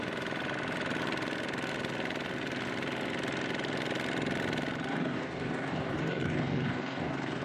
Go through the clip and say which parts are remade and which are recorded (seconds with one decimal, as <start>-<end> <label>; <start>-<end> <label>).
0.0-4.9 recorded; 4.9-7.4 remade